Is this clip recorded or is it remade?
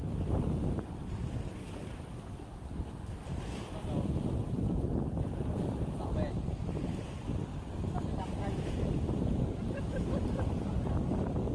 remade